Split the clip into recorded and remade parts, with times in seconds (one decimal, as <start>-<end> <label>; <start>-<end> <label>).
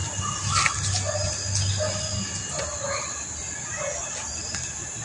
0.0-5.0 recorded